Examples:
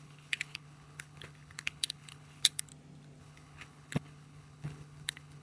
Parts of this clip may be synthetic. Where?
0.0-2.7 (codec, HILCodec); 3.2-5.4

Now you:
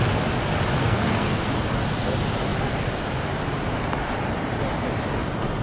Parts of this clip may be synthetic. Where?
0.8-1.5 (codec, SNAC)

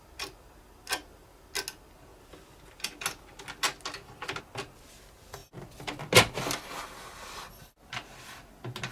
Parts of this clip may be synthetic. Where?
none

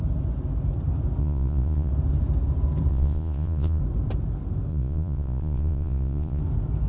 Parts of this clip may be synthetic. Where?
1.2-1.9 (vocoder, Vocos); 2.9-3.8; 4.7-6.4

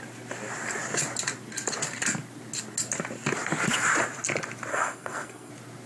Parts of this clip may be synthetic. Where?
4.7-5.5 (codec, SNAC)

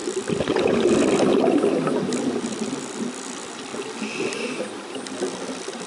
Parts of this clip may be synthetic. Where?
0.0-3.2 (vocoder, BigVGAN v2); 3.7-4.6